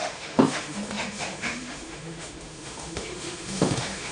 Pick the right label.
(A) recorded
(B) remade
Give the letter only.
B